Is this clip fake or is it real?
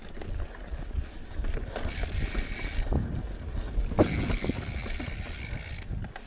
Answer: real